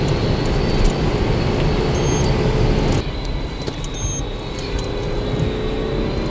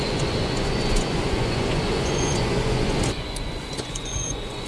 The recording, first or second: first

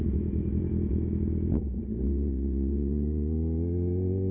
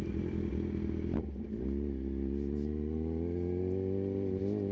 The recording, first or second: second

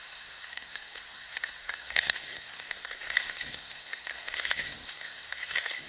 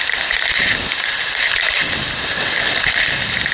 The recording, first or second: second